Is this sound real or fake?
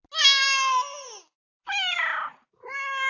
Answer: real